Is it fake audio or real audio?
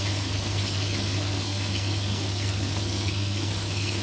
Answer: fake